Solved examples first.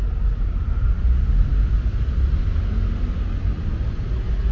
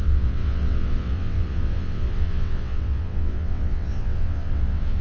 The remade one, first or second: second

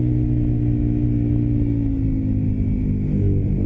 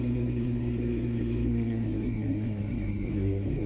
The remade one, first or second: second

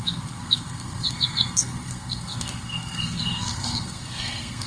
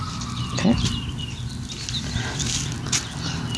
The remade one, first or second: first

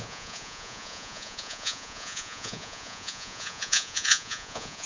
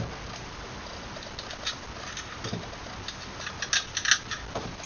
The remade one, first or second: first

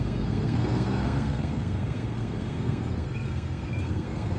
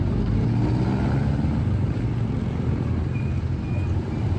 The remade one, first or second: first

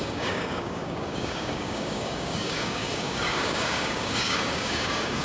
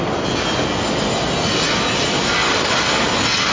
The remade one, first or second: first